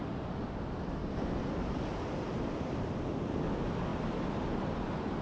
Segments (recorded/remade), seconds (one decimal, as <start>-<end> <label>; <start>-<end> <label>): 0.0-5.2 recorded